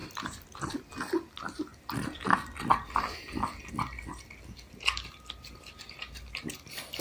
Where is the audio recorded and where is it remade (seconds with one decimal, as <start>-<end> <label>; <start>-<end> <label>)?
0.0-7.0 recorded